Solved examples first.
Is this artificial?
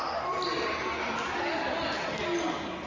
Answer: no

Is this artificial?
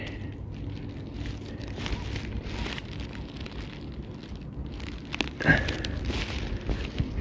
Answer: no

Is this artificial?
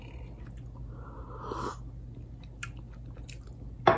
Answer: no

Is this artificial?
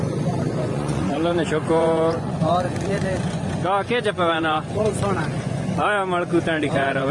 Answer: yes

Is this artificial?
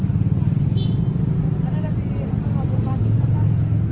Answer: no